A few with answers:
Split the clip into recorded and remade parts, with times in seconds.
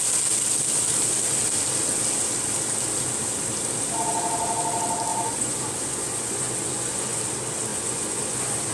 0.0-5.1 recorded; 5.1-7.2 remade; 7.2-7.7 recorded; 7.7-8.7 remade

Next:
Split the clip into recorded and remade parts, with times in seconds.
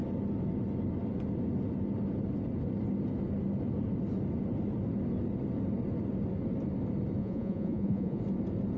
0.0-7.2 recorded; 7.2-8.2 remade; 8.2-8.8 recorded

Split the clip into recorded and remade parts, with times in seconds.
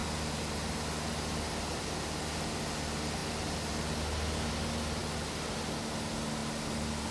0.0-2.5 remade; 2.5-6.4 recorded; 6.4-7.1 remade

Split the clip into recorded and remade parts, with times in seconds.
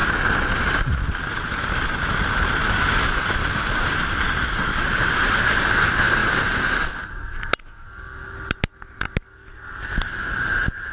0.0-10.9 recorded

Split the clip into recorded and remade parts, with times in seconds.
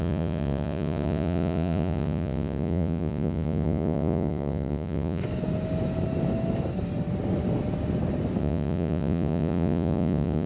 0.0-5.2 remade; 5.2-8.4 recorded; 8.4-10.5 remade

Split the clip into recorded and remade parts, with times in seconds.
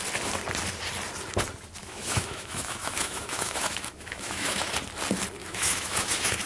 0.0-1.8 recorded; 1.8-4.7 remade; 4.7-5.4 recorded; 5.4-6.5 remade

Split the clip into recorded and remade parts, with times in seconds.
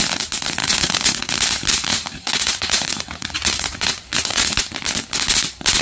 0.0-0.6 recorded; 0.6-1.3 remade; 1.3-1.9 recorded; 1.9-4.6 remade; 4.6-5.8 recorded